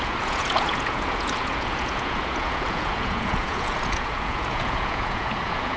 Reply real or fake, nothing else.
fake